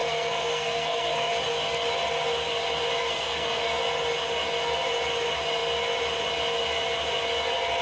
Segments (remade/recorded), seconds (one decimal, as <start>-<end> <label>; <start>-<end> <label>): 0.0-1.3 remade; 1.3-3.0 recorded; 3.0-3.8 remade; 3.8-7.8 recorded